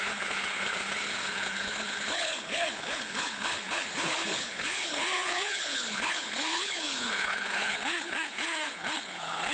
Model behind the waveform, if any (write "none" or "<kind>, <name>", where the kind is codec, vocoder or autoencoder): codec, HILCodec